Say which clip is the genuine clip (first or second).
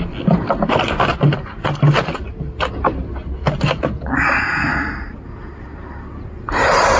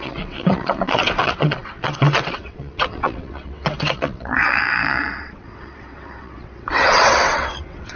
first